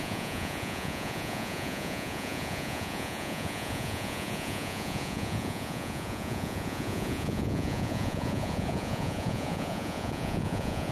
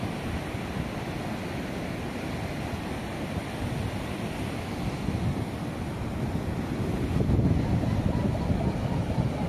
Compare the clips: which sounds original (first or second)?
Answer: second